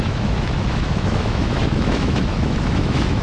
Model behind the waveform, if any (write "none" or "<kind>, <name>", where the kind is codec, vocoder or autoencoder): autoencoder, DAC-VAE